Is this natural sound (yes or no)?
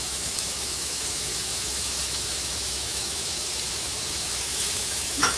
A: no